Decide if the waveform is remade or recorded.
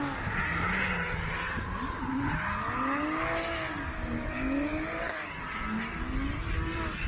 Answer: recorded